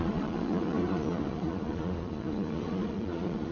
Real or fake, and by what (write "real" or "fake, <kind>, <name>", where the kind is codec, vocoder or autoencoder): fake, vocoder, Vocos